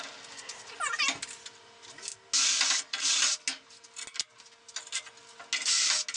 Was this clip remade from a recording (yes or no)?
no